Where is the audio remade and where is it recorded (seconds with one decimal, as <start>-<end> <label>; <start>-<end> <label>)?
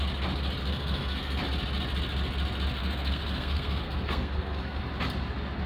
0.0-0.6 recorded; 0.6-1.4 remade; 1.4-2.8 recorded; 2.8-4.8 remade; 4.8-5.7 recorded